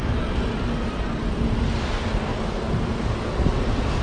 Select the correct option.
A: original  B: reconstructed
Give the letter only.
A